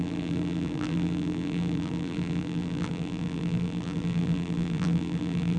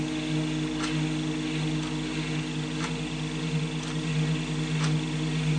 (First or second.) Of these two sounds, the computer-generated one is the first